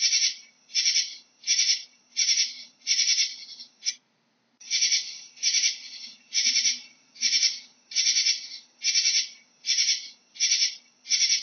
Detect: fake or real fake